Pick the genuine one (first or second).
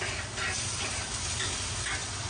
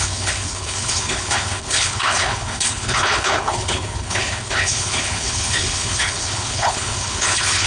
first